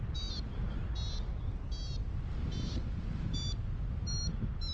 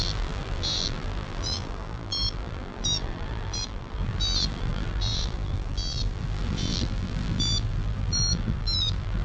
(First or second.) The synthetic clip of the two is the second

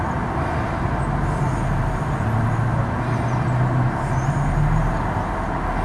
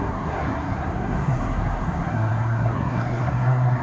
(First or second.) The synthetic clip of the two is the second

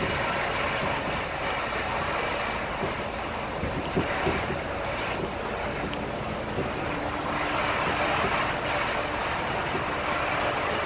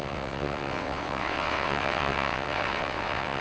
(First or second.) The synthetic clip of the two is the second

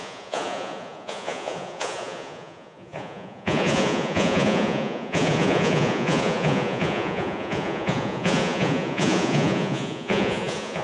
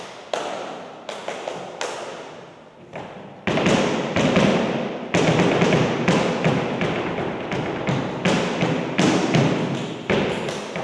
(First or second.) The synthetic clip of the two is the first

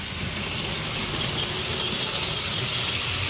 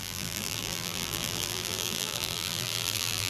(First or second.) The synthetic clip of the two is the second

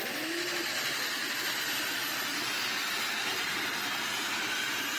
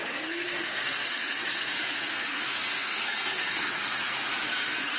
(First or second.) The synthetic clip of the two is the second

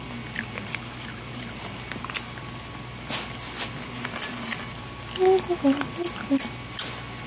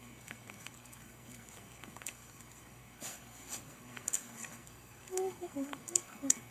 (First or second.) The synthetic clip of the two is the second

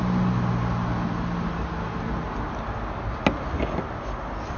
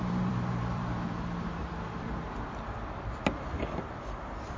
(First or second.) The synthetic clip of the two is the second